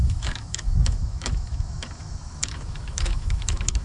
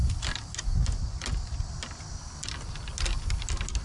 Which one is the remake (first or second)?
first